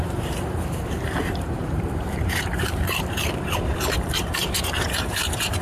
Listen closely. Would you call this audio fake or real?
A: fake